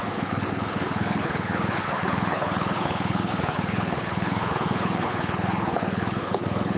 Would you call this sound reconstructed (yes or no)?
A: yes